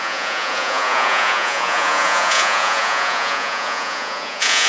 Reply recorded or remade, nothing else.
remade